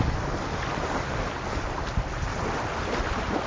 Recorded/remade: recorded